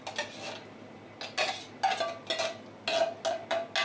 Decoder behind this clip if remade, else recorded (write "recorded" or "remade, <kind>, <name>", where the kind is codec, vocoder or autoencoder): recorded